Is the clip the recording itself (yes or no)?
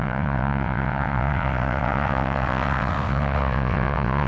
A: no